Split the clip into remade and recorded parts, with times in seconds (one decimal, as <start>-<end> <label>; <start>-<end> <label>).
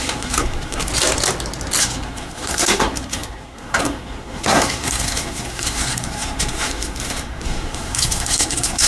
0.0-0.9 remade; 0.9-1.8 recorded; 1.8-8.9 remade